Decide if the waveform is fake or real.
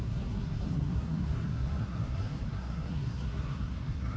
fake